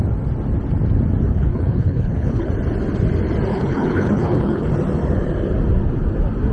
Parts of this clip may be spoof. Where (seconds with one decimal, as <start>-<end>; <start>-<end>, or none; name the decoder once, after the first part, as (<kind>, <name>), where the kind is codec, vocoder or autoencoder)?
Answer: 1.3-2.5 (codec, HILCodec); 3.5-4.7